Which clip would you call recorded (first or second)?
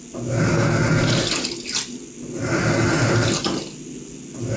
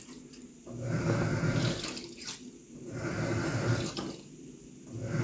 first